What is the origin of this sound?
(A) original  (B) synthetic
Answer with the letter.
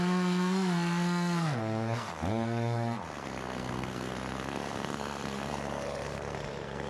B